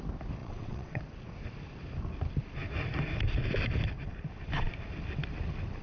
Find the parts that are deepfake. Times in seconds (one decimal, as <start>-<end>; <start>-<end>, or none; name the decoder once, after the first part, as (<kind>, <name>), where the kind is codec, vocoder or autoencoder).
0.4-1.0 (vocoder, WaveNeXt)